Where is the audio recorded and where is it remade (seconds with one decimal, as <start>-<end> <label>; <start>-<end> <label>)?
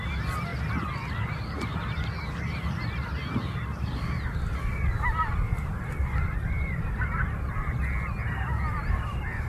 0.0-9.5 recorded